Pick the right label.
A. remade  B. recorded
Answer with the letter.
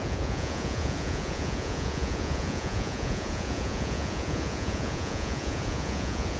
A